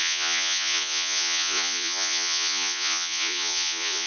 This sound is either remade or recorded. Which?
remade